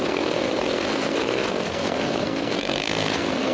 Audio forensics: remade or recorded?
remade